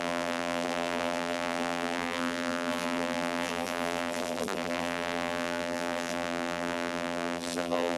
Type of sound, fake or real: fake